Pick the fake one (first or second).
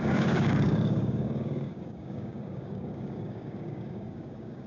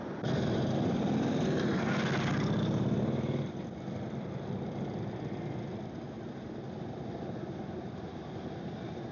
first